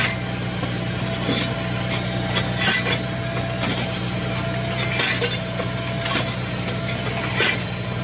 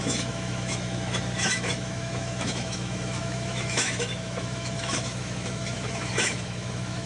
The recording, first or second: first